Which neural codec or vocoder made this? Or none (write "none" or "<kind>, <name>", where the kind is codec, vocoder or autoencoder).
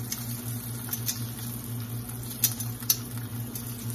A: none